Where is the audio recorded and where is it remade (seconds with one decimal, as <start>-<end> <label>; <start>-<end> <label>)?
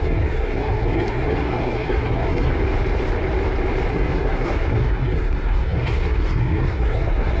0.0-2.5 remade; 2.5-3.9 recorded; 3.9-7.4 remade